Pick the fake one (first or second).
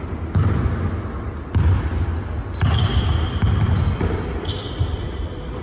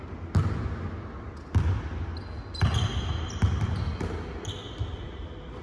first